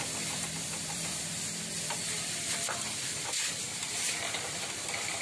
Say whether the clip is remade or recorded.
remade